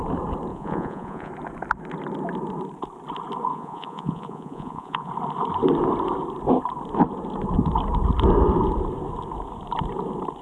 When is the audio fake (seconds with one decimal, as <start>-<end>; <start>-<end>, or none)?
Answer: 0.5-1.3; 3.5-5.1